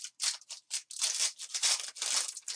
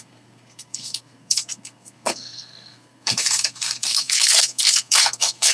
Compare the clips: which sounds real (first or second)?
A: first